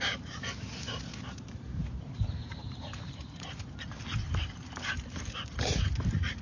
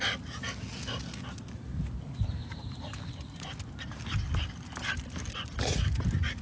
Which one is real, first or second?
second